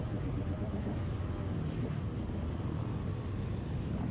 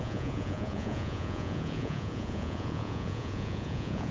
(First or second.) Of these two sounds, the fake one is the second